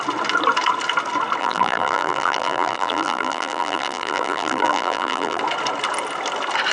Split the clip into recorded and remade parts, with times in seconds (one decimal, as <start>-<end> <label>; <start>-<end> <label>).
0.0-1.4 recorded; 1.4-5.4 remade; 5.4-6.7 recorded